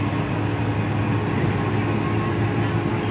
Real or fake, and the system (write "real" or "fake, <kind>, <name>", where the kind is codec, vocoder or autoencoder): real